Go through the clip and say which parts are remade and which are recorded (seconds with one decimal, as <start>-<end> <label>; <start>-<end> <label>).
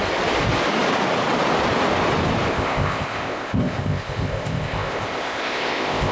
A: 0.0-2.5 recorded; 2.5-6.1 remade